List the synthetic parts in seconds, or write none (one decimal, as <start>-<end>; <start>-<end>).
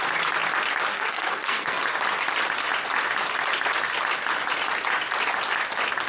0.9-1.8